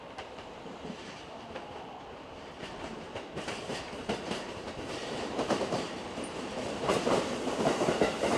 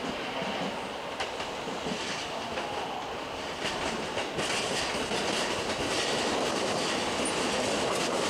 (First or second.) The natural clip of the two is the second